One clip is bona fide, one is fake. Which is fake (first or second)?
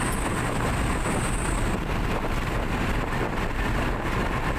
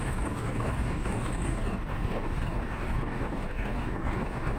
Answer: second